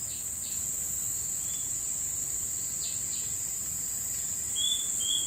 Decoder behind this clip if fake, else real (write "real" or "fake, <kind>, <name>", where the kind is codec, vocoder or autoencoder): real